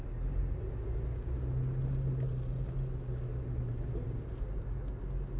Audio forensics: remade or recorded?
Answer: recorded